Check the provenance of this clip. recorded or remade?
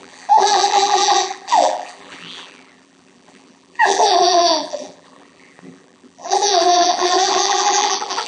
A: remade